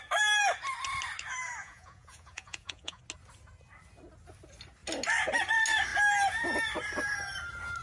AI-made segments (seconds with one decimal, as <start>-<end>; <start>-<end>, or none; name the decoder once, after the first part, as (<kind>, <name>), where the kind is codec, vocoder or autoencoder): 1.6-3.0 (vocoder, Vocos)